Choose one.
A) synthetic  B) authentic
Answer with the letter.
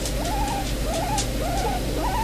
B